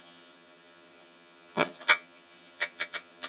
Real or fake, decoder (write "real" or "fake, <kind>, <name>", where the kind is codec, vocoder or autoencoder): fake, vocoder, HiFi-GAN